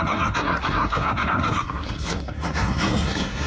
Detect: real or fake fake